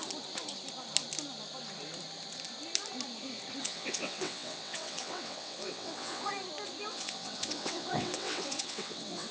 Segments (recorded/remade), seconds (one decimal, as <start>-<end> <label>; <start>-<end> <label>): 0.0-3.6 recorded; 3.6-6.3 remade; 6.3-6.9 recorded; 6.9-9.3 remade